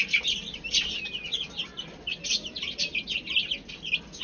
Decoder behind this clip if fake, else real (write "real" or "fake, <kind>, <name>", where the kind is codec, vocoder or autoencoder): real